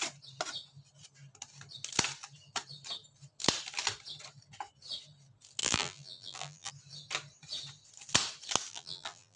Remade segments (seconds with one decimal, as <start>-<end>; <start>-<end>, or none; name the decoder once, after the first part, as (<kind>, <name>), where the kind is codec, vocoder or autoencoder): 5.6-6.7 (vocoder, BigVGAN v2); 8.7-9.4